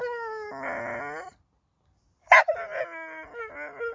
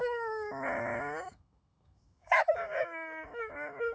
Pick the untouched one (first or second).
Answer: first